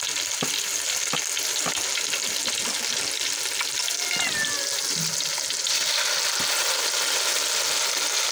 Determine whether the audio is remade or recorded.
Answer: recorded